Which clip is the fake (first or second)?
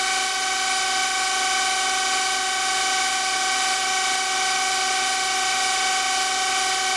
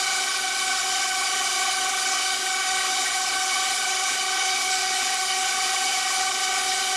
second